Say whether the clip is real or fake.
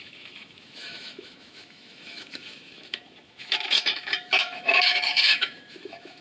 fake